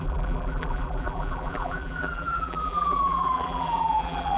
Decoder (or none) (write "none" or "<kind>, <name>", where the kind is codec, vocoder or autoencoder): vocoder, BigVGAN v2